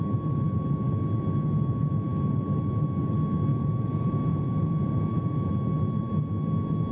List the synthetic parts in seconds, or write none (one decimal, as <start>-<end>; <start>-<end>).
3.5-5.5

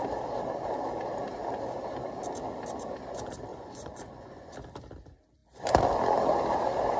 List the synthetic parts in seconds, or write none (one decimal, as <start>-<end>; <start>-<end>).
3.5-4.5

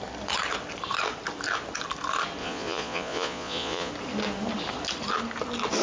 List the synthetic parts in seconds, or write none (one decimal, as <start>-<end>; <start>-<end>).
2.4-3.9